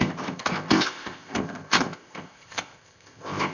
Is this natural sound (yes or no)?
no